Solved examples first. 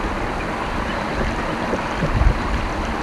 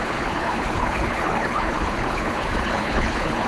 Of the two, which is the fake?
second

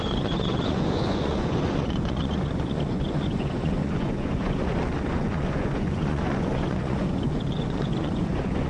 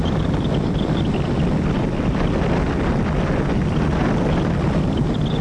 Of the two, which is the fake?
first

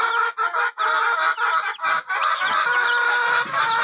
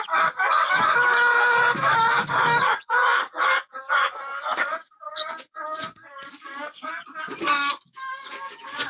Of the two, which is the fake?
second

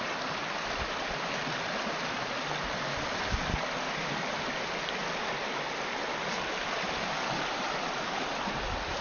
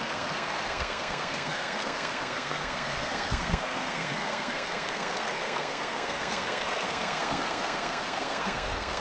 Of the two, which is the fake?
second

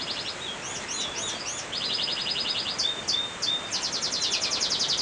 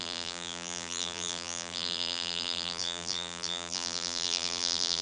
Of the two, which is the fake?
second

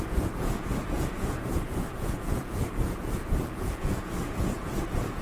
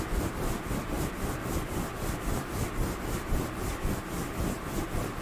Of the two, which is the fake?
first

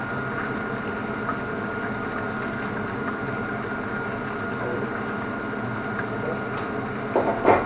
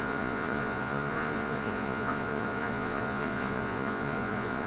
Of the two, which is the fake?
second